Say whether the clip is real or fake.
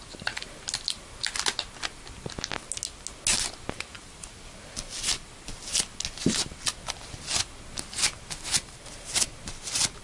real